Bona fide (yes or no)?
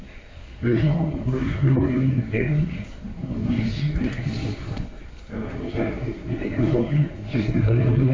no